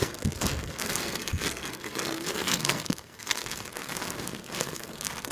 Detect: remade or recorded remade